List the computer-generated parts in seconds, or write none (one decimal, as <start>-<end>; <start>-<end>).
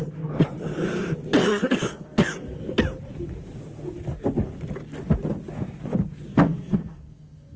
1.4-2.8; 6.3-7.6